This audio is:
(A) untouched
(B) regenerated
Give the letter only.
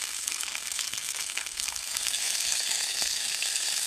B